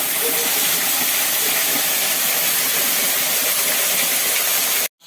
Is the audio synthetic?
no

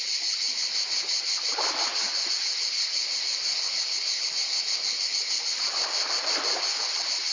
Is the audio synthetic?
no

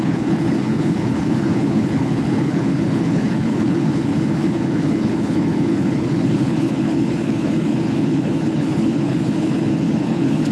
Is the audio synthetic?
yes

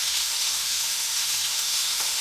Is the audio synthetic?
yes